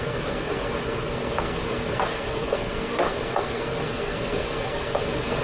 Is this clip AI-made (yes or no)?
yes